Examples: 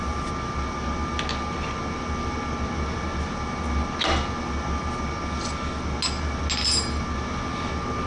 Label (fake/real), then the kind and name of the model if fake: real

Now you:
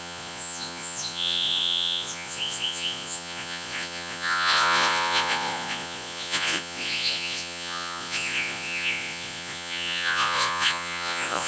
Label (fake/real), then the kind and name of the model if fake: fake, vocoder, Vocos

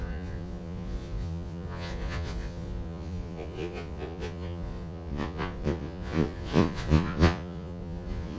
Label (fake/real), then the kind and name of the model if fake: fake, vocoder, Vocos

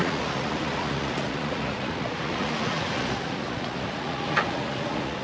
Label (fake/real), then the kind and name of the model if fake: fake, vocoder, Vocos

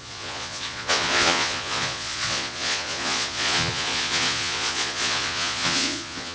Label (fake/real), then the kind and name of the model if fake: fake, vocoder, Vocos